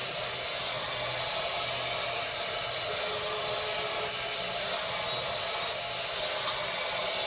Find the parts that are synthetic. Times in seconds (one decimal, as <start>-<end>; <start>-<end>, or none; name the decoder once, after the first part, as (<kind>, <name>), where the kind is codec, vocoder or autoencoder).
none